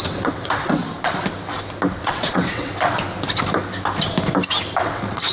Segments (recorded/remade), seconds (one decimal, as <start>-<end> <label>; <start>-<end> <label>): 0.0-0.8 remade; 0.8-2.0 recorded; 2.0-2.7 remade; 2.7-4.8 recorded; 4.8-5.3 remade